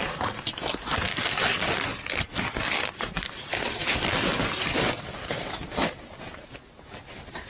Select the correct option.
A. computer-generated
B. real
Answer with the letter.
B